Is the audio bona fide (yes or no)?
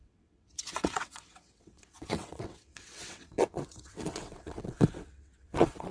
no